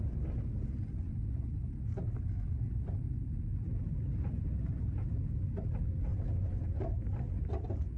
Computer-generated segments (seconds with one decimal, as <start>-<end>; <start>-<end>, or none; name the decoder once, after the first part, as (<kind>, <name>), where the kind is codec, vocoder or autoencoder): 6.1-7.5 (vocoder, BigVGAN v2)